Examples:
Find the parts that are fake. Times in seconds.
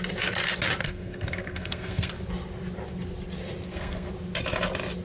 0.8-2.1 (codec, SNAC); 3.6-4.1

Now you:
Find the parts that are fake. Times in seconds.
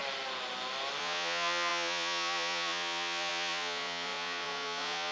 1.0-5.1 (vocoder, Vocos)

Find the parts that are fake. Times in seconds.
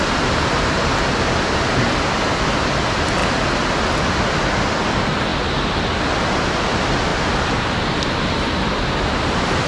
none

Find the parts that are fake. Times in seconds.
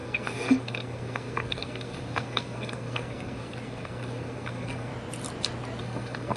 0.0-4.9 (codec, SNAC); 5.8-6.4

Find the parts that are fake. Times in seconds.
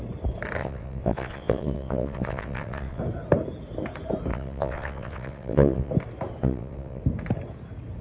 0.6-3.0 (vocoder, WaveNeXt); 4.3-5.9; 6.4-7.0